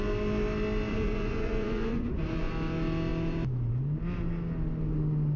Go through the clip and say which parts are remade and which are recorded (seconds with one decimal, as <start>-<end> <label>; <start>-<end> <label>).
0.0-0.9 recorded; 0.9-2.5 remade; 2.5-5.4 recorded